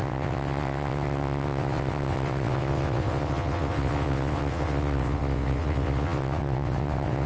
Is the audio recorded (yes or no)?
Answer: no